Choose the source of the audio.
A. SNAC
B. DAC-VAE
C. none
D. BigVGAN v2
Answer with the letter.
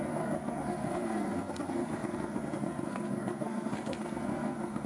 A